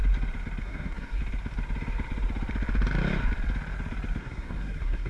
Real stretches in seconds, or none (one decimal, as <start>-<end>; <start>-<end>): 0.0-0.6; 1.2-4.2